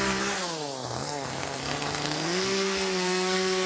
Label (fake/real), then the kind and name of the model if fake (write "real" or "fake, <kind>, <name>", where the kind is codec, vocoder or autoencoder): fake, codec, SNAC